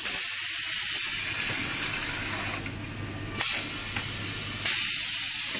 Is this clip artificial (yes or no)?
no